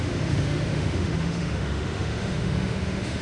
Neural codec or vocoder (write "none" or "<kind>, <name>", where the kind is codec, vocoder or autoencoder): autoencoder, DAC-VAE